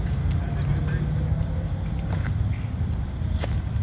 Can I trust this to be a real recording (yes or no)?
yes